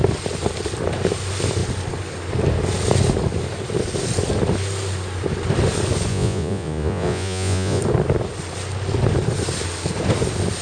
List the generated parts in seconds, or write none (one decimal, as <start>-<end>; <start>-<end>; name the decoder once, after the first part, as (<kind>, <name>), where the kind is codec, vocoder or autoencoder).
6.1-7.8 (vocoder, Vocos)